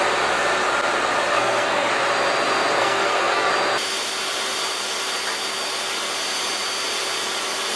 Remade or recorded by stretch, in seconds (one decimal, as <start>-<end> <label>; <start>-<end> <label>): 0.0-1.3 recorded; 1.3-1.9 remade; 1.9-2.8 recorded; 2.8-3.5 remade; 3.5-7.8 recorded